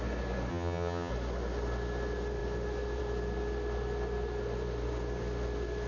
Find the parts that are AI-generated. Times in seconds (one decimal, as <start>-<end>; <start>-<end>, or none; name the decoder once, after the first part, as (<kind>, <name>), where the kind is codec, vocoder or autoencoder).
0.5-1.1 (vocoder, HiFi-GAN)